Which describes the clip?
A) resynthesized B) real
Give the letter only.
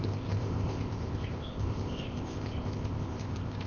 A